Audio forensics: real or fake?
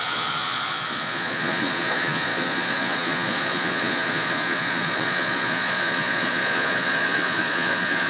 fake